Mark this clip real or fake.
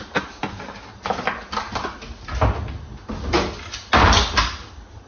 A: real